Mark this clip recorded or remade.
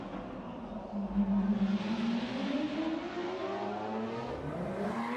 recorded